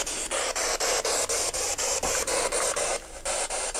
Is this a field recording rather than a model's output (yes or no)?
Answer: no